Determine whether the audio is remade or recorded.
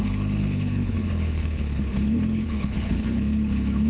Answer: remade